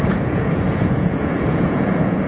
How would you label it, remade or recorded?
remade